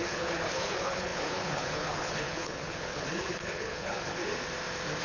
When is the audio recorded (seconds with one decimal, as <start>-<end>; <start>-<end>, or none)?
4.2-5.0